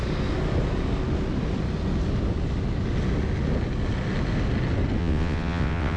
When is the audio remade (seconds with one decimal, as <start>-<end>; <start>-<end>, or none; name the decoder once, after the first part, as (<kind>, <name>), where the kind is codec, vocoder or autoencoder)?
5.0-6.0 (vocoder, WaveNeXt)